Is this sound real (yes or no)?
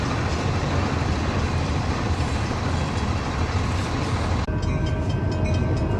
yes